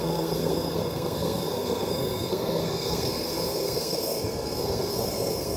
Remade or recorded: remade